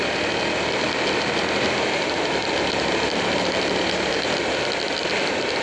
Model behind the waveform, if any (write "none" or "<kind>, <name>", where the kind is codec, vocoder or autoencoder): none